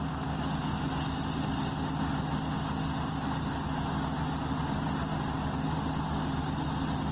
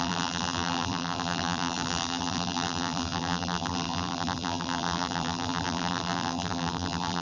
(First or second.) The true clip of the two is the first